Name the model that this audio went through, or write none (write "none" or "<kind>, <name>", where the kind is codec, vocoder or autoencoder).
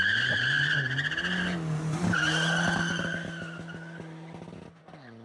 none